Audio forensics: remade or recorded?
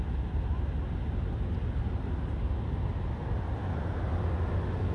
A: recorded